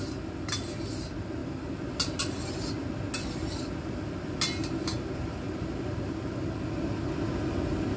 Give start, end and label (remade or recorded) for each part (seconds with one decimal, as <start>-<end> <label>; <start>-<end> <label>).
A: 0.0-8.0 recorded